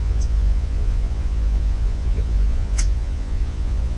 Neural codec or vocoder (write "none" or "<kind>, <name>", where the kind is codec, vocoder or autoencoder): vocoder, Vocos